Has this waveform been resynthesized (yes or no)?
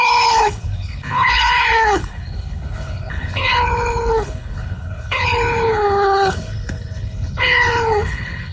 yes